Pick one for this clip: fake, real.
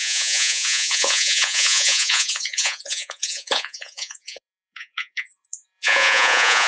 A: fake